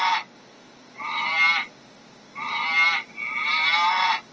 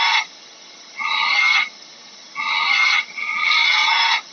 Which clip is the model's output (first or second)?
second